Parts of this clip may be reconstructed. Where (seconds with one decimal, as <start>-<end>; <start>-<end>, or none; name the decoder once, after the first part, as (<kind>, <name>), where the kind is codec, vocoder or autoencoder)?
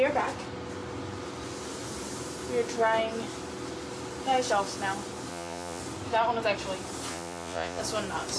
5.3-5.8 (vocoder, Vocos); 7.1-7.8